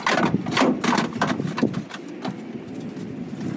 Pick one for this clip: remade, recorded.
recorded